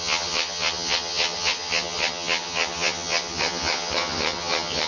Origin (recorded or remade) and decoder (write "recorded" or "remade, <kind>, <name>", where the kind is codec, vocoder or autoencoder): remade, vocoder, HiFi-GAN